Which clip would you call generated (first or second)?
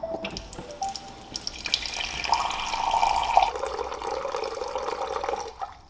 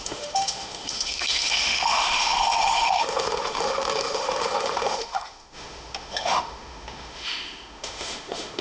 second